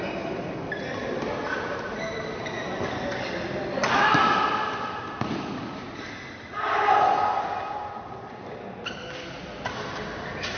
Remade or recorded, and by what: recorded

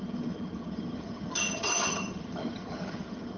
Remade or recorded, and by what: remade, vocoder, HiFi-GAN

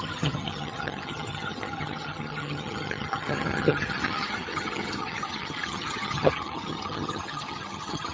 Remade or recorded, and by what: remade, vocoder, HiFi-GAN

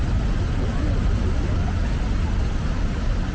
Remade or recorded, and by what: recorded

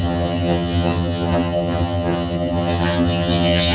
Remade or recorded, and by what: remade, vocoder, HiFi-GAN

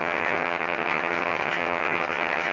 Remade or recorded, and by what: remade, vocoder, HiFi-GAN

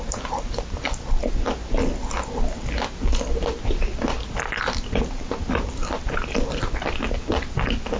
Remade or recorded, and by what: recorded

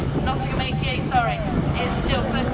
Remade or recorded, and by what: recorded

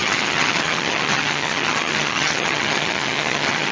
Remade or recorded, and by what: remade, vocoder, HiFi-GAN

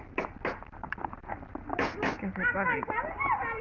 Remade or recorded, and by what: recorded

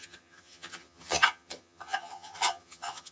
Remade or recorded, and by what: remade, vocoder, HiFi-GAN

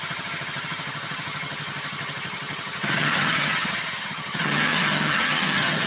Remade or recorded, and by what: remade, vocoder, HiFi-GAN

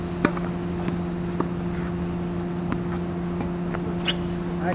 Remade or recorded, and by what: recorded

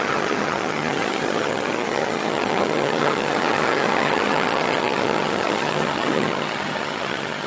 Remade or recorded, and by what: remade, vocoder, HiFi-GAN